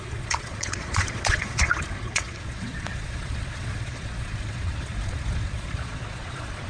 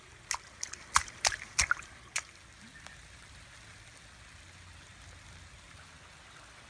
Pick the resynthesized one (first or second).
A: first